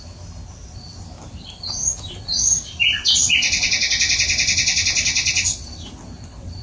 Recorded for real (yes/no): yes